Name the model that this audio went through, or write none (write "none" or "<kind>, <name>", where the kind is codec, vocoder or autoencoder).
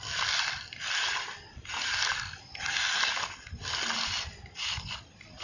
none